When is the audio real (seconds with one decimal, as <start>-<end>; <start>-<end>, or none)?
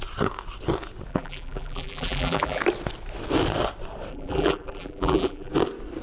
0.0-1.1; 2.6-4.1; 5.5-6.0